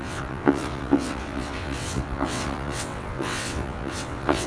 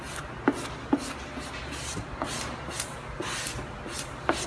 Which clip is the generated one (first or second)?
first